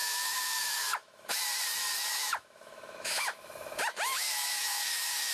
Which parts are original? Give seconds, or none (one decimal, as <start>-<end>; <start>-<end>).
1.4-2.1